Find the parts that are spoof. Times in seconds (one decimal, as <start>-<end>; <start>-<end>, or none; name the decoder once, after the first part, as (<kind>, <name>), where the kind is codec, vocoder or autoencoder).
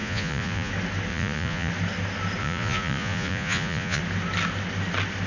0.0-0.7 (vocoder, Vocos); 1.1-1.7; 2.4-4.0